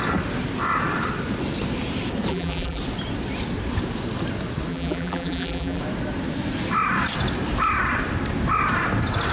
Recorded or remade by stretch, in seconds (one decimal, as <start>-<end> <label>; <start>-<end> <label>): 0.0-2.3 recorded; 2.3-2.8 remade; 2.8-4.7 recorded; 4.7-5.8 remade; 5.8-9.3 recorded